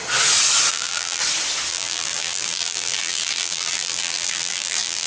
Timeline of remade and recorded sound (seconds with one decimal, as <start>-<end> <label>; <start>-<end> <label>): 0.0-0.7 recorded; 0.7-1.2 remade; 1.2-1.7 recorded; 1.7-5.1 remade